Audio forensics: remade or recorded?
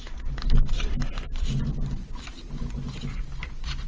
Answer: recorded